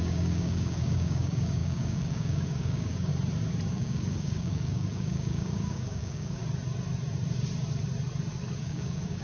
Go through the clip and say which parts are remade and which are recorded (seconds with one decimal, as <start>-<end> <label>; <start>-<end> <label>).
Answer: 0.0-3.1 remade; 3.1-3.7 recorded; 3.7-6.4 remade; 6.4-8.6 recorded; 8.6-9.2 remade